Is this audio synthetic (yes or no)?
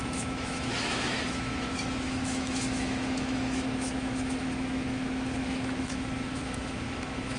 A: yes